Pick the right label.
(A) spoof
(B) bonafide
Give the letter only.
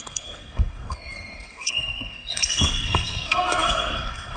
A